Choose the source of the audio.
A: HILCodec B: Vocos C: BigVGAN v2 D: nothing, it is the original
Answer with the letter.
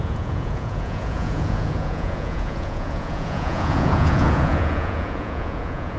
B